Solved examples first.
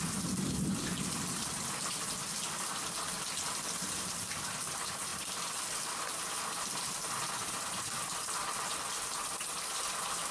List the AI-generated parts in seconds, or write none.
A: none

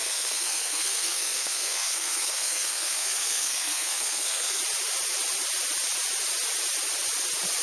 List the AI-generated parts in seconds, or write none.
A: 0.0-4.6 (codec, SNAC)

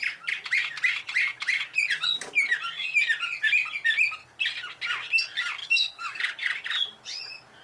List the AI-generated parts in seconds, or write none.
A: 5.6-6.2 (codec, DAC)